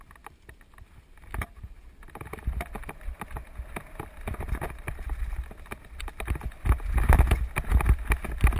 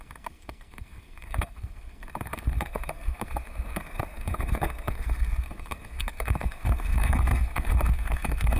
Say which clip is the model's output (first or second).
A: second